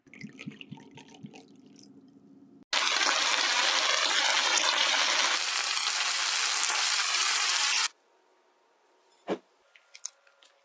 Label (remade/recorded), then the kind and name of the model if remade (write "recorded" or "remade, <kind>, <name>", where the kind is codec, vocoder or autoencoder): recorded